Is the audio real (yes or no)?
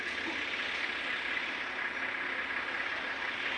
yes